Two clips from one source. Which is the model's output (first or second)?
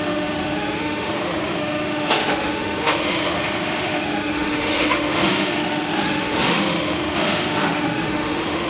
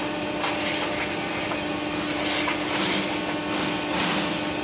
first